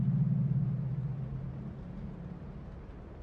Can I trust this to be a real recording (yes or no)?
yes